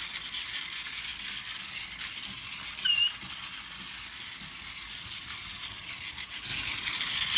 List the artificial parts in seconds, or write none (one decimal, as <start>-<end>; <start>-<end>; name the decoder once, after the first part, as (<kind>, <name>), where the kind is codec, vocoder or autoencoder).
none